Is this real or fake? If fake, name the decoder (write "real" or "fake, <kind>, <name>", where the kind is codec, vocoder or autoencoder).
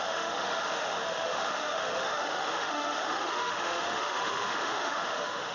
fake, autoencoder, DAC-VAE